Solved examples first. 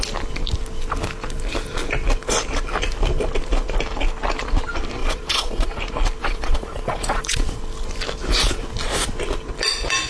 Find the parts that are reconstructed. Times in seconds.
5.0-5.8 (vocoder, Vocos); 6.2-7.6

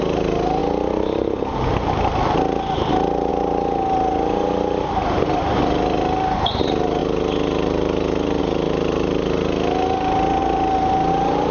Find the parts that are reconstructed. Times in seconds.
none

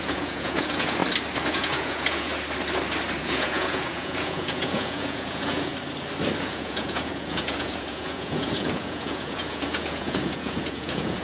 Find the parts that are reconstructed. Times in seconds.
0.0-1.0 (vocoder, Vocos); 1.5-2.3; 3.2-5.7; 6.4-11.2